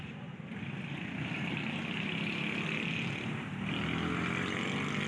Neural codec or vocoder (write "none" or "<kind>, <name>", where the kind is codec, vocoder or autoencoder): none